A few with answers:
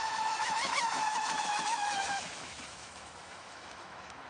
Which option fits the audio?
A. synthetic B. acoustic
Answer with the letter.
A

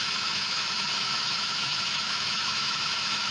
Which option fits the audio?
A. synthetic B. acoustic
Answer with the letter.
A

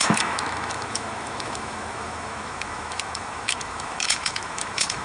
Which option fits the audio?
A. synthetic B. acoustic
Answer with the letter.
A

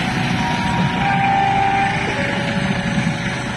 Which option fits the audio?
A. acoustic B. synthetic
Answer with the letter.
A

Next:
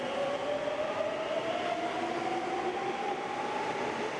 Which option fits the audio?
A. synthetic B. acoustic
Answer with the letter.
B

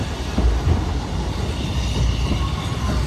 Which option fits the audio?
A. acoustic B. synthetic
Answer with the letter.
A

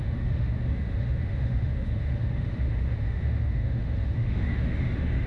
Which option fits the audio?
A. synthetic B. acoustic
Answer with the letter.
A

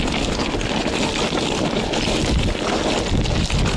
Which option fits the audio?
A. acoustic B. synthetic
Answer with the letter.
A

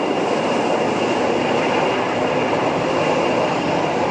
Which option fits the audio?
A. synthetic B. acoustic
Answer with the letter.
B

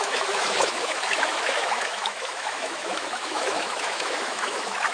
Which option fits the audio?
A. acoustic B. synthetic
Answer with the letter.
B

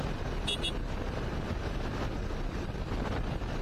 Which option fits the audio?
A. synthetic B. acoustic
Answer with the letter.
B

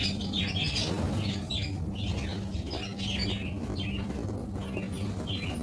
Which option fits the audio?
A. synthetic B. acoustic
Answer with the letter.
B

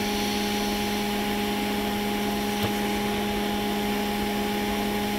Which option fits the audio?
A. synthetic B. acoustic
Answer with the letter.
B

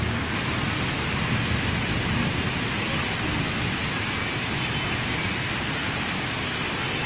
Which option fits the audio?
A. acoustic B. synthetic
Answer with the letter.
A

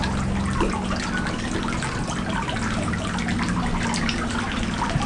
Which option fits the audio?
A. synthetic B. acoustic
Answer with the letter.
B